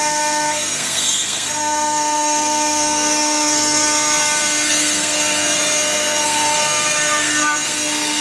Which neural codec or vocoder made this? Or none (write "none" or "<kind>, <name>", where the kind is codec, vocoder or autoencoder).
codec, SNAC